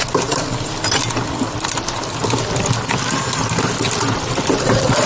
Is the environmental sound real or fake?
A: real